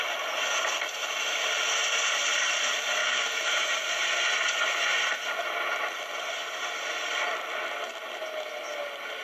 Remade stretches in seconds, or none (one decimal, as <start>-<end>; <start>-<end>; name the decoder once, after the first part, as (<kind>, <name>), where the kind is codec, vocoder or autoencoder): 3.0-3.7 (autoencoder, DAC-VAE)